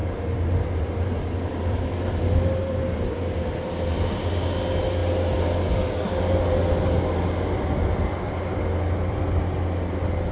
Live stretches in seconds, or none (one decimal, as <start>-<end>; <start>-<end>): 4.2-10.3